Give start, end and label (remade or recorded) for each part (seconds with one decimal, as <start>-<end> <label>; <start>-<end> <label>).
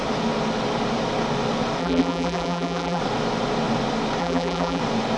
0.0-1.8 recorded; 1.8-3.0 remade; 3.0-4.2 recorded; 4.2-4.8 remade; 4.8-5.2 recorded